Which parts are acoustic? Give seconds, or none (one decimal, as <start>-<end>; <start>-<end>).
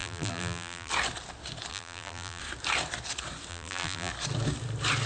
0.9-1.7; 2.4-3.5; 4.1-5.1